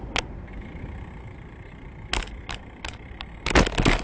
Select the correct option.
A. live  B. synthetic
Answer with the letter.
A